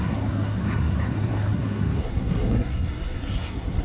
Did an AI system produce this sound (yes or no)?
yes